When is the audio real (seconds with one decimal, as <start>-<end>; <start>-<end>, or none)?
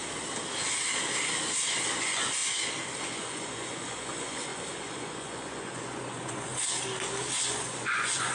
0.0-2.0; 2.4-3.0; 6.5-7.4